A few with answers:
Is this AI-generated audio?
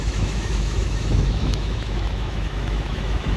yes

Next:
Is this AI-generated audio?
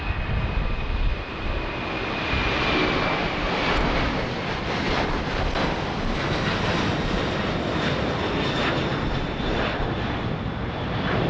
no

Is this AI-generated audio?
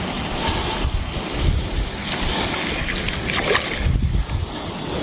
no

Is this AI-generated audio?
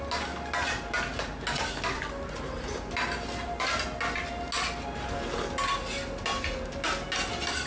no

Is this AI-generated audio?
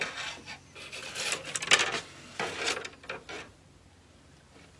no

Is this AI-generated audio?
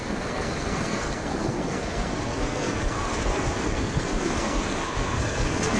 yes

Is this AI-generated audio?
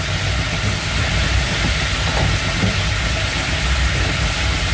no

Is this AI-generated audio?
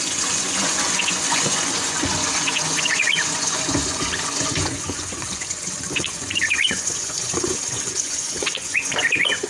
yes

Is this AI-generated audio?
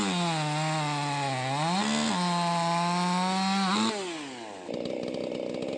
no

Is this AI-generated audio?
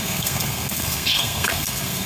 yes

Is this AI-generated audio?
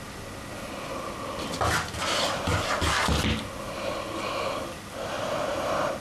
no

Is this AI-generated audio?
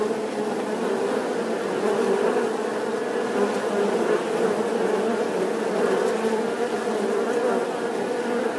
no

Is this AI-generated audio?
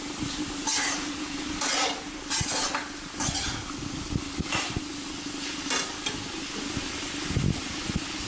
no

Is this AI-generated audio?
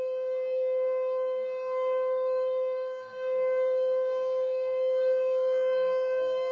yes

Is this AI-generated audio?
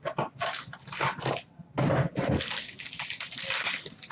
no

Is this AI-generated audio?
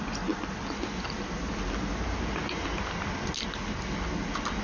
no